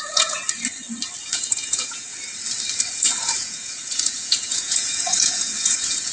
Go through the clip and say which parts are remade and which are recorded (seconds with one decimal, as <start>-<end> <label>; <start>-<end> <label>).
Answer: 0.0-0.4 remade; 0.4-1.2 recorded; 1.2-2.1 remade; 2.1-2.9 recorded; 2.9-6.1 remade

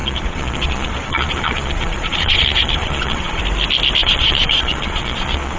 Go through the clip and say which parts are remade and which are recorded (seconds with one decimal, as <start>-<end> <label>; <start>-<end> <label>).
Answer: 0.0-3.4 remade; 3.4-4.0 recorded; 4.0-5.6 remade

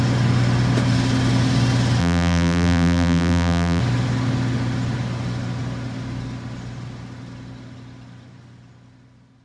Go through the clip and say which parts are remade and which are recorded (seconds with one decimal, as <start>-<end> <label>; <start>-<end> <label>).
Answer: 0.0-2.0 recorded; 2.0-3.8 remade; 3.8-9.4 recorded